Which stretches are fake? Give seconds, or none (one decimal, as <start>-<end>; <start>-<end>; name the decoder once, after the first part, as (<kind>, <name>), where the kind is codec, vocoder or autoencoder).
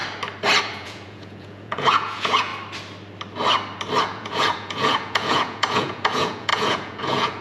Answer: 0.6-2.5 (vocoder, Vocos); 4.0-7.4